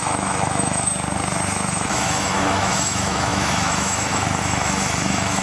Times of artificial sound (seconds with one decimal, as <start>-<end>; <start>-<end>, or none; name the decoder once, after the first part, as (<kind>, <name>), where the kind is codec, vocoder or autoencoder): 0.0-0.9 (autoencoder, DAC-VAE); 1.7-5.4